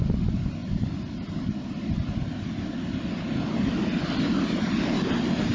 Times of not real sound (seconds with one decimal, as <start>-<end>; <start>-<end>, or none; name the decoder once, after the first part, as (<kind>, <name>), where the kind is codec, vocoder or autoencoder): none